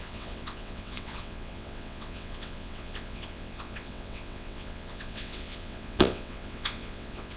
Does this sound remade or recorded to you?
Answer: remade